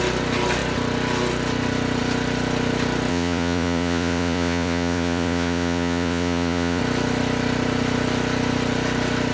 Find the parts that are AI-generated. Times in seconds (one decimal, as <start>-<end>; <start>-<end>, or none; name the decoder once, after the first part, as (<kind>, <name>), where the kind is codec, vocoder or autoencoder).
3.1-6.8 (vocoder, Vocos)